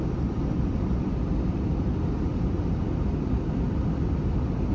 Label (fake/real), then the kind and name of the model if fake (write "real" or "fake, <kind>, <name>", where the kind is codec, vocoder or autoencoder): fake, vocoder, BigVGAN v2